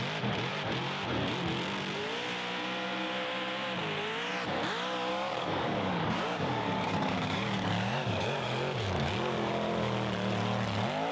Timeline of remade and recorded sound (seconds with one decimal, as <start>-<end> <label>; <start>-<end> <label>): 0.0-5.1 recorded; 5.1-9.5 remade; 9.5-11.1 recorded